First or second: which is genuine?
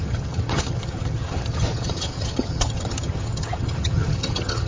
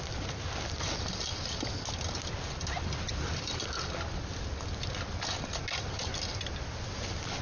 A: second